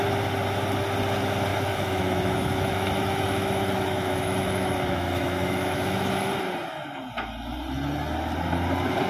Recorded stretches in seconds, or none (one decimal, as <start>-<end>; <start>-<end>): 0.0-1.5; 6.3-9.1